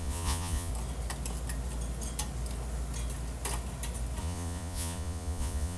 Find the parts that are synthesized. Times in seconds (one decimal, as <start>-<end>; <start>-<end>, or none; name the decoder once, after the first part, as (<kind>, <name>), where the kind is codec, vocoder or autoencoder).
0.0-0.7 (vocoder, Vocos); 4.2-5.8